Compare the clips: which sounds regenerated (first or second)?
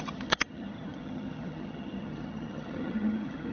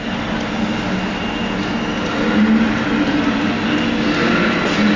first